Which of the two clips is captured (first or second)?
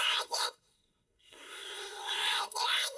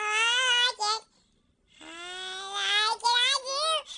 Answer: second